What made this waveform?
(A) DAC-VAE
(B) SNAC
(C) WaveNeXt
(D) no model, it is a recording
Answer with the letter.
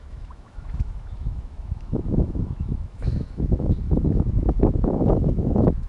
A